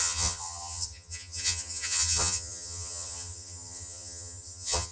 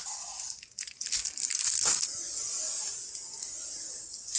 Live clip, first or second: second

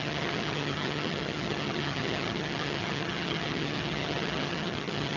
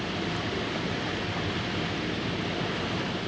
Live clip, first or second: second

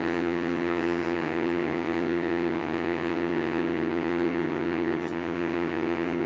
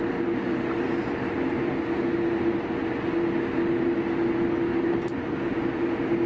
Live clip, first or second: second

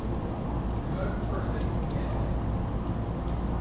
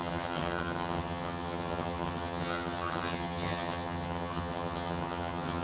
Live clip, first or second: first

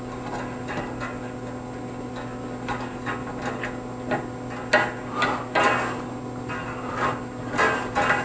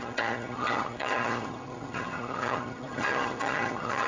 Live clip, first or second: first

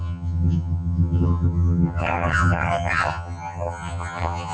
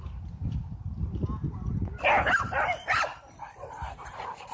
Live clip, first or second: second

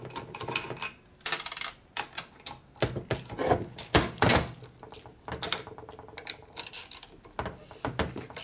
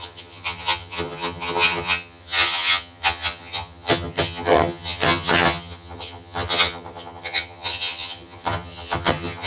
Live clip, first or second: first